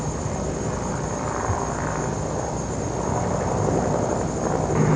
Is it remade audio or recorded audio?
recorded